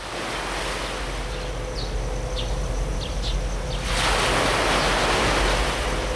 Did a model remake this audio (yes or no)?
no